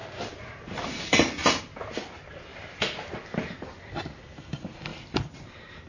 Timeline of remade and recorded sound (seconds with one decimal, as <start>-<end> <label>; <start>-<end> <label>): 0.0-1.6 remade; 1.6-4.9 recorded; 4.9-5.9 remade